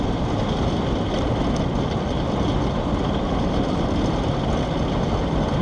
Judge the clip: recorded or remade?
recorded